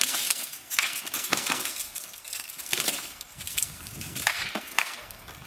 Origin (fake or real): fake